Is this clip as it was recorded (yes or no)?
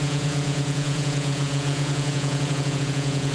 no